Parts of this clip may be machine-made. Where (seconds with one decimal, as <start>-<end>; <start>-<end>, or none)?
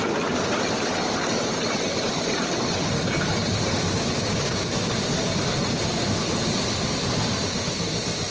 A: 4.2-4.9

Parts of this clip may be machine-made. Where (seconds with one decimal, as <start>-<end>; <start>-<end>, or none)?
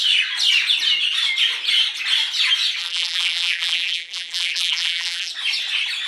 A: 2.8-5.3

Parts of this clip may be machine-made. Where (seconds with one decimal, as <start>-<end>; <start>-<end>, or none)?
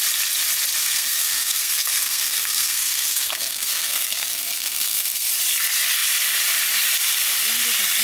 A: 0.8-5.3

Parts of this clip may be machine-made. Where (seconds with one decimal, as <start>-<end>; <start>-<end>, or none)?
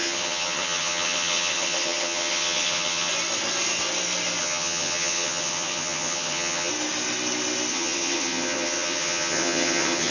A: 0.0-3.1; 4.4-6.7; 7.7-10.1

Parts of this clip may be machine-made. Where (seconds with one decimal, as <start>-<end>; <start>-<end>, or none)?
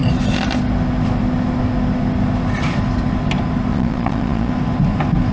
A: 3.7-4.5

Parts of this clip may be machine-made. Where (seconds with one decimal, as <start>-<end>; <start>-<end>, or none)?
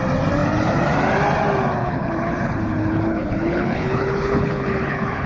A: 1.8-5.3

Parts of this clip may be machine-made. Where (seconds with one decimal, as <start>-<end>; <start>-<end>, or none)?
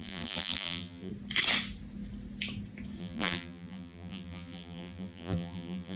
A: 0.0-1.1; 3.0-6.0